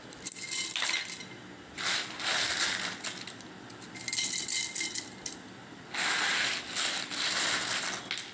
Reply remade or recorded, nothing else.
recorded